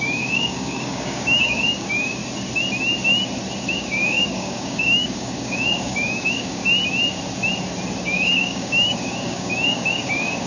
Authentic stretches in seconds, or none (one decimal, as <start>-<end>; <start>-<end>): 2.2-3.7; 6.6-8.0